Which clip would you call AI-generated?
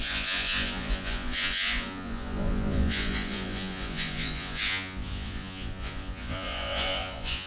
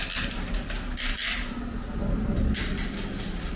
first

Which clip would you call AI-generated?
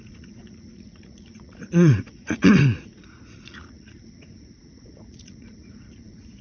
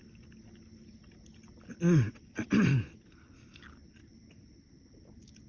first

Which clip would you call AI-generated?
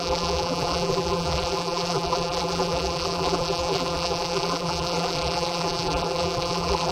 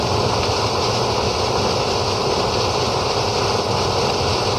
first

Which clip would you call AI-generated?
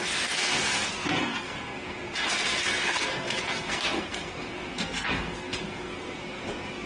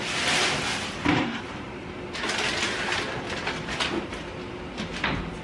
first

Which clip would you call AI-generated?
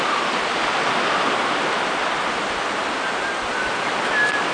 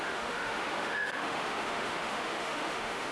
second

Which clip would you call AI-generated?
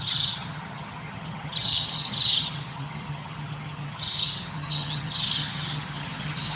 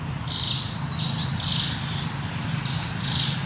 first